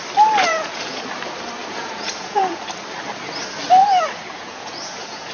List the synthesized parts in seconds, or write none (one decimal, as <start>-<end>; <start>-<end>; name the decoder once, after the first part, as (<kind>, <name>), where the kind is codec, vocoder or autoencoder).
0.5-1.0 (vocoder, Vocos); 1.6-2.6; 3.8-5.3